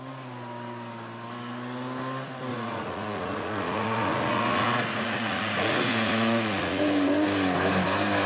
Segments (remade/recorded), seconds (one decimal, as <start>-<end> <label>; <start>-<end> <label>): 0.0-2.5 recorded; 2.5-6.8 remade; 6.8-8.3 recorded